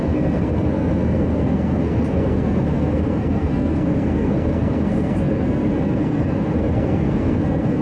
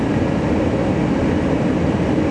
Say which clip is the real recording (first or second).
second